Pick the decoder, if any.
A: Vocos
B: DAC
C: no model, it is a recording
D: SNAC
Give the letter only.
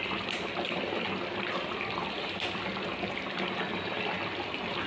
C